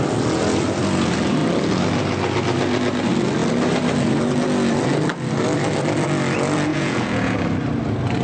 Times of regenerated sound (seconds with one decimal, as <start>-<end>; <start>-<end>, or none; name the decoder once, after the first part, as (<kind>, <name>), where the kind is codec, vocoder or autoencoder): 6.7-7.4 (vocoder, Vocos)